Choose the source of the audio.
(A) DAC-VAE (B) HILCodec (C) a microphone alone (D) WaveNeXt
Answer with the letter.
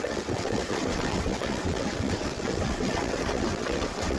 D